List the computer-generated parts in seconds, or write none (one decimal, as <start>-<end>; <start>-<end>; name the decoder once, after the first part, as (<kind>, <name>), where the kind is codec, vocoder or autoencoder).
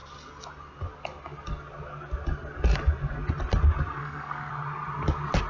4.0-4.5 (codec, SNAC)